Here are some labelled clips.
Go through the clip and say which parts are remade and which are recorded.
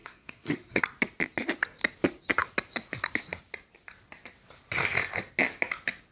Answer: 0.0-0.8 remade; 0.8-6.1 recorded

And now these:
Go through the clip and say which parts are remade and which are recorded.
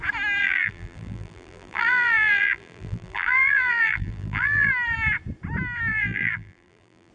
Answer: 0.0-0.4 recorded; 0.4-4.7 remade; 4.7-5.9 recorded; 5.9-7.1 remade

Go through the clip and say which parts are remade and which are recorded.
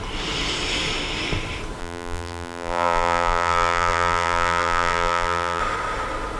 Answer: 0.0-1.8 recorded; 1.8-5.6 remade; 5.6-6.4 recorded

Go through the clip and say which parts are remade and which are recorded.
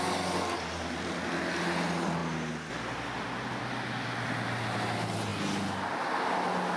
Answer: 0.0-6.8 recorded